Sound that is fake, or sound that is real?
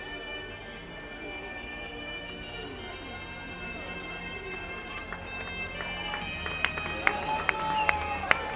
real